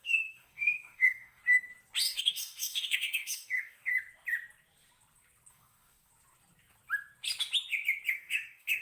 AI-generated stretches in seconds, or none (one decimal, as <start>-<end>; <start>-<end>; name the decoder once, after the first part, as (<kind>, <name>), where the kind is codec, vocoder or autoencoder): 0.0-1.4 (codec, DAC); 2.0-3.9; 5.5-6.1; 8.1-8.8